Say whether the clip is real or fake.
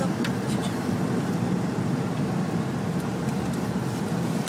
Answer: fake